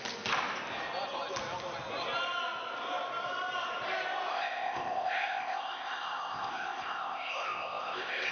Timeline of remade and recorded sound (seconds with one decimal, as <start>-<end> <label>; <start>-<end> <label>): 0.0-4.3 recorded; 4.3-8.3 remade